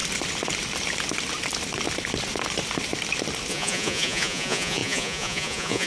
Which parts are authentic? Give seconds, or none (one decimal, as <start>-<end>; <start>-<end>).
0.0-3.5